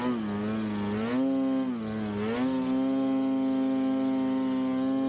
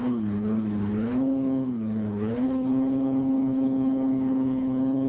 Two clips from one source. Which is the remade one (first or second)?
second